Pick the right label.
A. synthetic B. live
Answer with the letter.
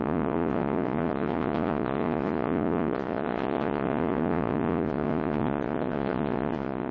A